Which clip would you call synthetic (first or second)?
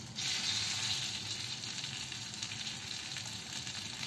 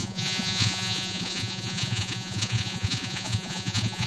second